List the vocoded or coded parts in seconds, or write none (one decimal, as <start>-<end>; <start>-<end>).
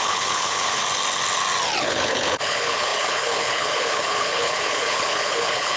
0.0-0.8; 1.8-5.8